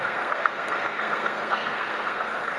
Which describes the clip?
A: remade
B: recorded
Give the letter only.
A